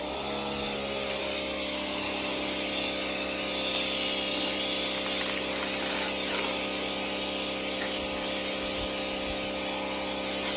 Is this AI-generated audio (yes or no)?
no